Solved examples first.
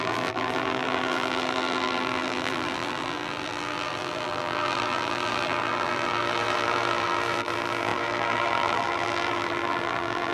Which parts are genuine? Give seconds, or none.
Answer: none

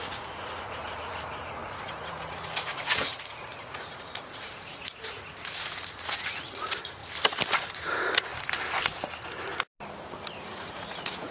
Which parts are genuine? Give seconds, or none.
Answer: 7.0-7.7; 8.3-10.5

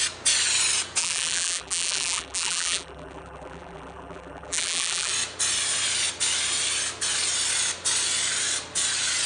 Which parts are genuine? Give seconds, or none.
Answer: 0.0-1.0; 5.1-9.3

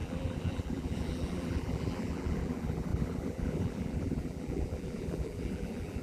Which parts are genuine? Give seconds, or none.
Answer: none

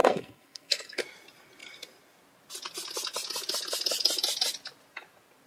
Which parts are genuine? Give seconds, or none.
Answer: 1.0-5.5

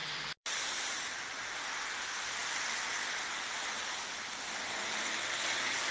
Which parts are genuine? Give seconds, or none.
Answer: 1.2-5.9